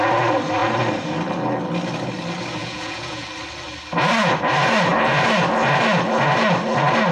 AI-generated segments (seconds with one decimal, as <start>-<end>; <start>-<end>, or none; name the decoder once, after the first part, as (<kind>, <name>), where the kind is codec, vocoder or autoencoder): 2.6-3.3 (vocoder, Vocos)